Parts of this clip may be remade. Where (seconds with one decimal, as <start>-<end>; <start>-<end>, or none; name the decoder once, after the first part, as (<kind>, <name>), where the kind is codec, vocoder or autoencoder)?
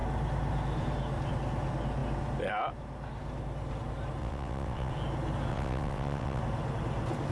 4.2-4.9 (vocoder, WaveNeXt); 5.5-6.4